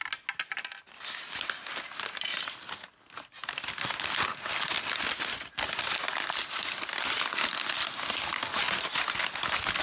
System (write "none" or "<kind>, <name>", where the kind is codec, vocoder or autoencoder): none